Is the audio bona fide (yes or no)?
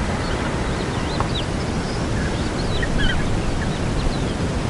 yes